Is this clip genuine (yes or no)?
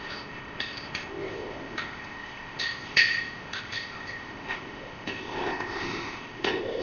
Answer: no